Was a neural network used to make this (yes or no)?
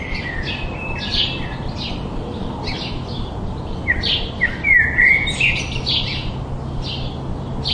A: no